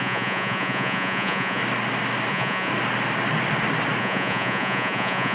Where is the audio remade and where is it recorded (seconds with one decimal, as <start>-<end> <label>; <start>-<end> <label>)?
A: 0.0-1.6 remade; 1.6-2.3 recorded; 2.3-2.7 remade; 2.7-4.0 recorded; 4.0-5.3 remade